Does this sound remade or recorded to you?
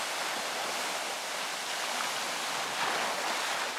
recorded